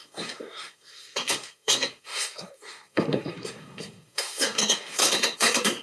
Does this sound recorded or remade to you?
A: remade